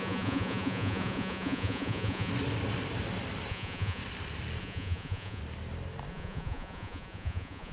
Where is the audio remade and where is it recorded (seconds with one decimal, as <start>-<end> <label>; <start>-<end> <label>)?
0.0-2.3 remade; 2.3-3.5 recorded; 3.5-4.0 remade; 4.0-4.6 recorded; 4.6-5.4 remade; 5.4-6.1 recorded; 6.1-7.7 remade